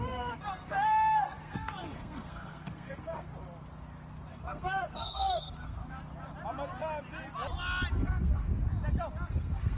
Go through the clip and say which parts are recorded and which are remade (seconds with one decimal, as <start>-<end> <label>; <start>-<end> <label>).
0.0-3.3 remade; 3.3-4.3 recorded; 4.3-5.8 remade; 5.8-7.9 recorded; 7.9-8.5 remade; 8.5-9.3 recorded; 9.3-9.8 remade

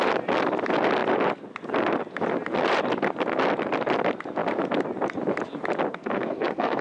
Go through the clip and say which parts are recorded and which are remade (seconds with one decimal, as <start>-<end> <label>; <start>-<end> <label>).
0.0-5.9 recorded; 5.9-6.8 remade

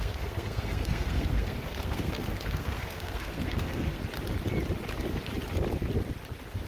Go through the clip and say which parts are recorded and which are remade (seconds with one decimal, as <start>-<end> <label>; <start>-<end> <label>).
0.0-4.0 remade; 4.0-6.7 recorded

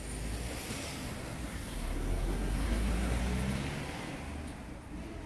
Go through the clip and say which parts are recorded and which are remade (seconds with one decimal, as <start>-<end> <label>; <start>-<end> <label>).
0.0-1.5 recorded; 1.5-3.2 remade; 3.2-5.3 recorded

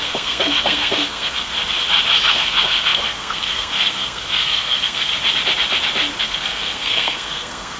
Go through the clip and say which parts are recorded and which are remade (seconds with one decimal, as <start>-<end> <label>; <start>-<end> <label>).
0.0-1.5 remade; 1.5-2.3 recorded; 2.3-5.1 remade; 5.1-6.2 recorded; 6.2-7.8 remade

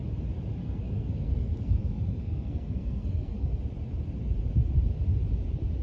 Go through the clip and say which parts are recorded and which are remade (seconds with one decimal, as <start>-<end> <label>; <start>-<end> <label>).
0.0-0.6 recorded; 0.6-3.6 remade; 3.6-5.8 recorded

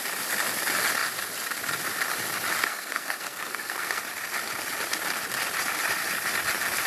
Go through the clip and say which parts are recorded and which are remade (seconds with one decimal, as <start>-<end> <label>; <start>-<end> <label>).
0.0-2.6 recorded; 2.6-4.0 remade; 4.0-6.9 recorded

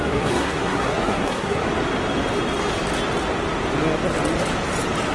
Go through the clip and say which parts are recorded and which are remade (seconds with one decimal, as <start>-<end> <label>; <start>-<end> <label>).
0.0-1.6 remade; 1.6-5.1 recorded